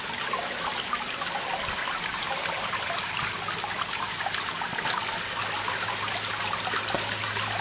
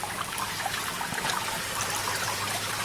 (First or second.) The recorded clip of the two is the first